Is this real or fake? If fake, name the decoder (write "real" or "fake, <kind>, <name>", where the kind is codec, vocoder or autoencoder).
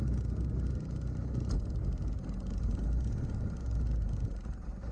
real